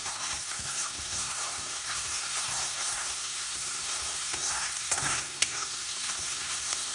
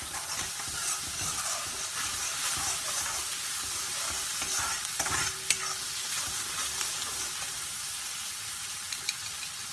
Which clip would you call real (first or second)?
second